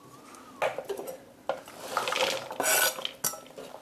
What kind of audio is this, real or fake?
real